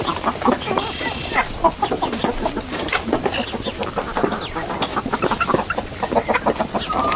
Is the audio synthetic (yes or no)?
no